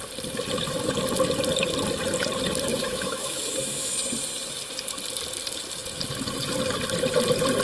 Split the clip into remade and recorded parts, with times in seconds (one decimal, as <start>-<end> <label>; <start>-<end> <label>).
0.0-2.7 recorded; 2.7-4.0 remade; 4.0-7.6 recorded